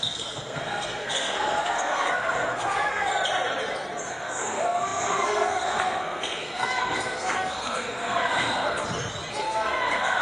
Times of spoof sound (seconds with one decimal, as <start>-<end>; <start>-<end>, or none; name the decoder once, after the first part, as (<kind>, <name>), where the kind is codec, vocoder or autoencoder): 0.0-3.1 (codec, SNAC); 4.1-8.8; 9.3-10.2